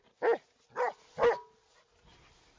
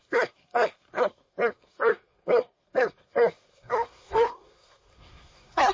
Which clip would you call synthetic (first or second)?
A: second